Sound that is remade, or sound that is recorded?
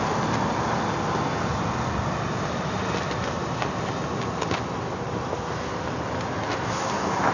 recorded